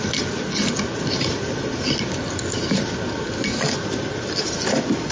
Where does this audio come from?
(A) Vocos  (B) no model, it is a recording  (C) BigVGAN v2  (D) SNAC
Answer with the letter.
B